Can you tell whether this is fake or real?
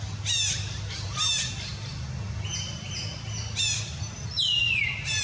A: real